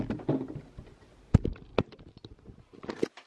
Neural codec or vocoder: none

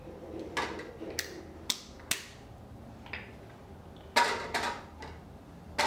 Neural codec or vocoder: none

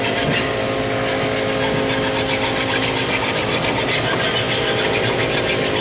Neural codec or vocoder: none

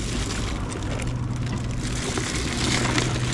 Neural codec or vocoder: none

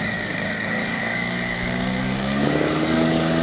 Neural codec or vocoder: codec, DAC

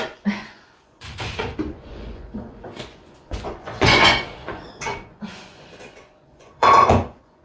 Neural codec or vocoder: vocoder, Vocos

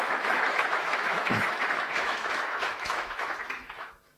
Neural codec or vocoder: autoencoder, DAC-VAE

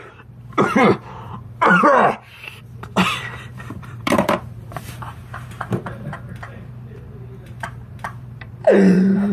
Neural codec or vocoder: vocoder, BigVGAN v2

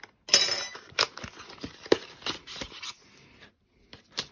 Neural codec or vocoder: none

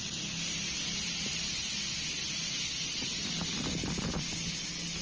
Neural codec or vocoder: none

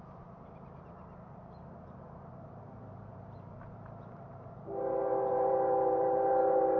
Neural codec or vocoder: vocoder, BigVGAN v2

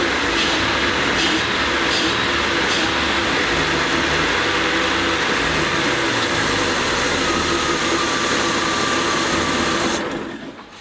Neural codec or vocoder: none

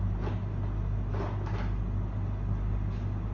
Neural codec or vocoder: none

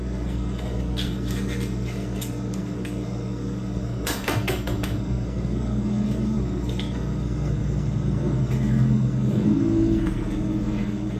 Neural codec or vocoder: codec, SNAC